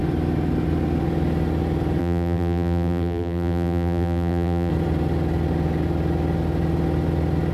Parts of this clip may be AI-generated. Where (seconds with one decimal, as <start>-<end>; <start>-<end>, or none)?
2.0-4.7